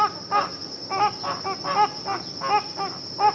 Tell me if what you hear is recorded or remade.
recorded